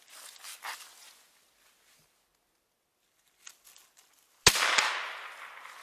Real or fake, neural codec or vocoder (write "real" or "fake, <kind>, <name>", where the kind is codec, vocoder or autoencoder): real